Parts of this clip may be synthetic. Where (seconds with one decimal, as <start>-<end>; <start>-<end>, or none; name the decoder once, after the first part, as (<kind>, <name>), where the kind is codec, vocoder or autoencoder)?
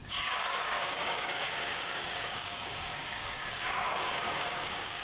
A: 0.0-5.0 (codec, DAC)